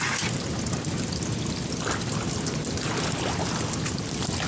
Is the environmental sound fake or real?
real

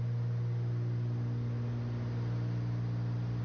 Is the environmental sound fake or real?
real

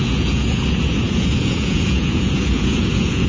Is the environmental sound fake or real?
fake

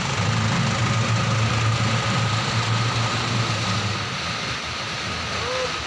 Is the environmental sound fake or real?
real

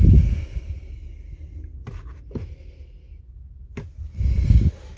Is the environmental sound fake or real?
real